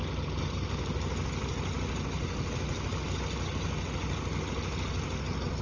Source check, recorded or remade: recorded